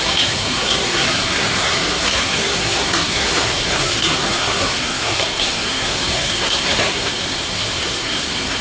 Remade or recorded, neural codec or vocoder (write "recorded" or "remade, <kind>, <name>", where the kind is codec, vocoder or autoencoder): remade, codec, SNAC